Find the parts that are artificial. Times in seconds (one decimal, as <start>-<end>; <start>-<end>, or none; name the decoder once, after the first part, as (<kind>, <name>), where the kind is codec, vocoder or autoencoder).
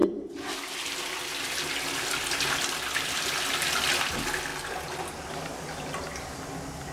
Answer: 0.0-0.7 (vocoder, BigVGAN v2)